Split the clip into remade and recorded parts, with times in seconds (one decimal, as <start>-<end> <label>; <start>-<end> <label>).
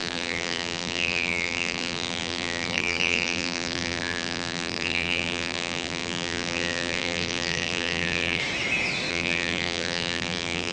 0.0-8.4 remade; 8.4-9.1 recorded; 9.1-10.7 remade